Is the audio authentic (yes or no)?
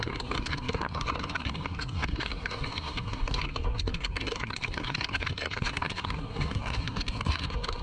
no